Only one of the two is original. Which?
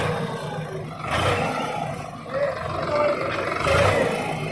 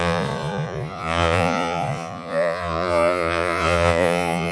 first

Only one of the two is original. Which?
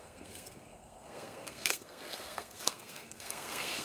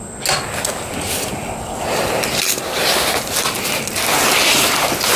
second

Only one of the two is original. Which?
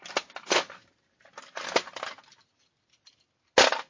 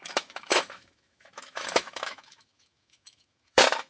first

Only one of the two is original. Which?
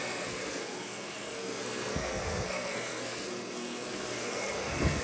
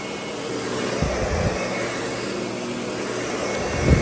second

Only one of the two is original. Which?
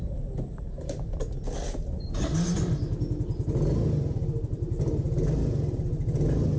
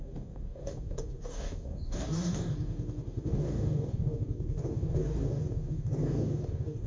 first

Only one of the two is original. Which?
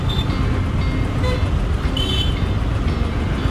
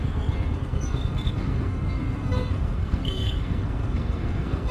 first